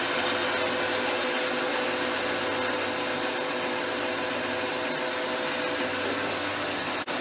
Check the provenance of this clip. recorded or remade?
recorded